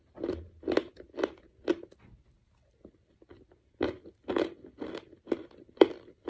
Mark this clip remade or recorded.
recorded